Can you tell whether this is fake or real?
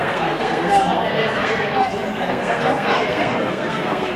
fake